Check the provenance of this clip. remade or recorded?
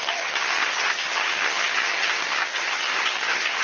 remade